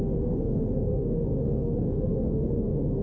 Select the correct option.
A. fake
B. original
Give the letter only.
A